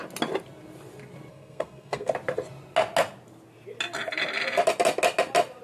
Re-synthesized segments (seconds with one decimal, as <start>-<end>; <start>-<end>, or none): 1.3-2.1